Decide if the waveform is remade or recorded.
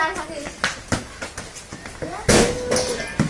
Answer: recorded